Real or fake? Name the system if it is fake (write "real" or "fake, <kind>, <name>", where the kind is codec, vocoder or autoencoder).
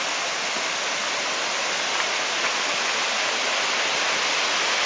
real